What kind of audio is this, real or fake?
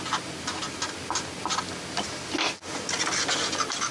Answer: real